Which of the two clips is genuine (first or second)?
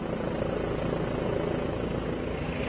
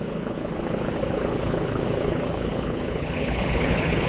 first